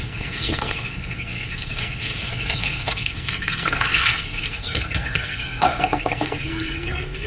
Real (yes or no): no